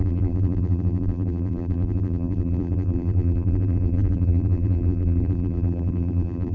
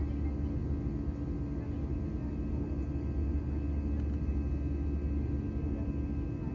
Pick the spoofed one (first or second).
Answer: first